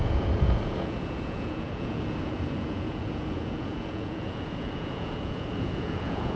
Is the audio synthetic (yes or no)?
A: yes